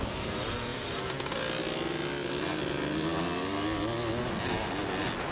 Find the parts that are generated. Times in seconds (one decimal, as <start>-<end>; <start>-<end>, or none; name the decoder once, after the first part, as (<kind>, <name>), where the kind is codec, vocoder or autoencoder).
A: none